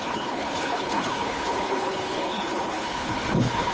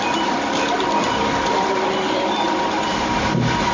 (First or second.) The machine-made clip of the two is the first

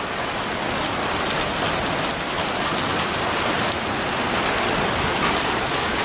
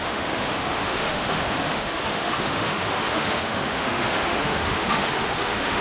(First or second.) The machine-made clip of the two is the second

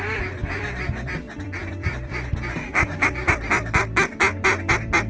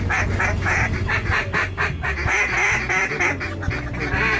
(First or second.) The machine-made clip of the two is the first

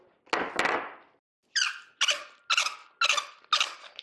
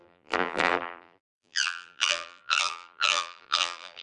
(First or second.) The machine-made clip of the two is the second